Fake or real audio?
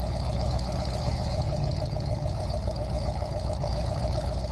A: fake